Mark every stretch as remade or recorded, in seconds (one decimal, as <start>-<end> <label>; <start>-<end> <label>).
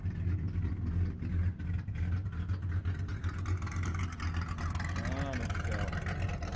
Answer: 0.0-1.6 remade; 1.6-3.1 recorded; 3.1-4.0 remade; 4.0-6.6 recorded